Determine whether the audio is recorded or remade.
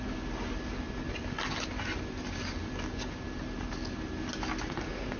recorded